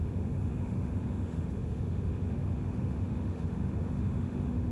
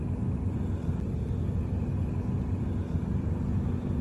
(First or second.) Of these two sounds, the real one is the second